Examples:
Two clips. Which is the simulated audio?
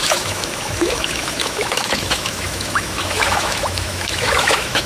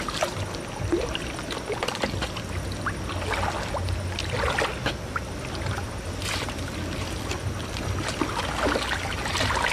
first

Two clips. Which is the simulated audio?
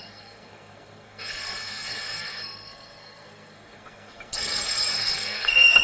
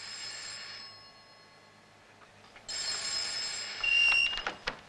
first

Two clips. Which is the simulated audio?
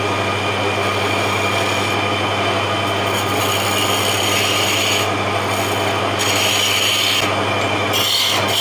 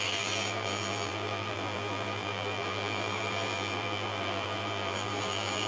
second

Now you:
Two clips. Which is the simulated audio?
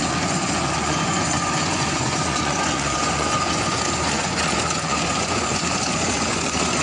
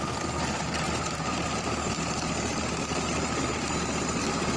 first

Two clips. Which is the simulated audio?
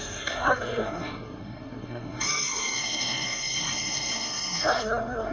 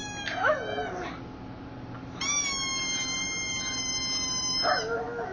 first